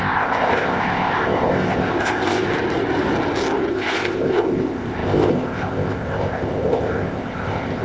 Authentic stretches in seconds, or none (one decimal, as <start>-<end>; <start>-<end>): 2.5-3.7